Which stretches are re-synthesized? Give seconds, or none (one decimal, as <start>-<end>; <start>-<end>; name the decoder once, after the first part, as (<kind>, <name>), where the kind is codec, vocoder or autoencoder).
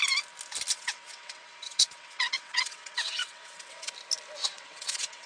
0.7-3.9 (vocoder, WaveNeXt); 4.4-5.3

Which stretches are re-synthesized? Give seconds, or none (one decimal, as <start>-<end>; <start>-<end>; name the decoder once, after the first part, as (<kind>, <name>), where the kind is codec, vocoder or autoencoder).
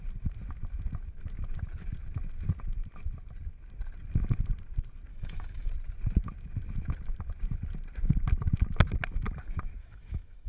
5.1-5.7 (autoencoder, DAC-VAE); 9.8-10.5